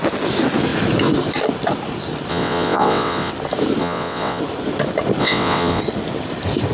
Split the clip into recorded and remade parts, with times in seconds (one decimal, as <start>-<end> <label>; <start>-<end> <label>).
0.0-2.3 recorded; 2.3-3.3 remade; 3.3-3.8 recorded; 3.8-4.4 remade; 4.4-5.2 recorded; 5.2-5.8 remade; 5.8-6.7 recorded

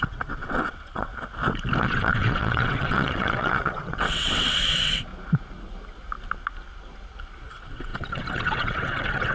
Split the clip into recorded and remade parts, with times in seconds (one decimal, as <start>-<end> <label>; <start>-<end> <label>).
0.0-1.1 remade; 1.1-1.8 recorded; 1.8-5.1 remade; 5.1-7.5 recorded; 7.5-9.3 remade